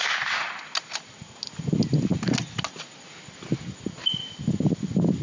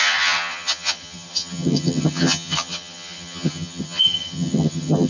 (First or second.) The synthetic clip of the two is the second